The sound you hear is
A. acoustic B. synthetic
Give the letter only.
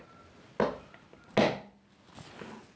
A